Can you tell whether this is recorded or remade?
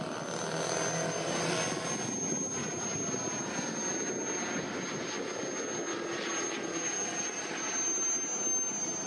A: recorded